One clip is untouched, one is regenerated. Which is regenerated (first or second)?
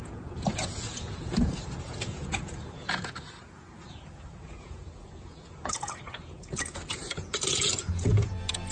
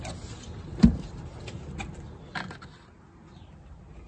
first